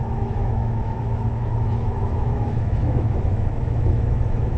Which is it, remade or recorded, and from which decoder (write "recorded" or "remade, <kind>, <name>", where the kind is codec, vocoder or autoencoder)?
remade, autoencoder, DAC-VAE